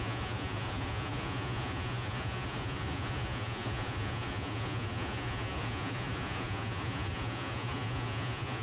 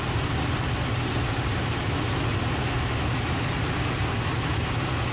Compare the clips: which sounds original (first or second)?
second